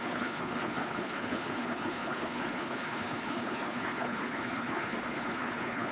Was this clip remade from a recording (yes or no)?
yes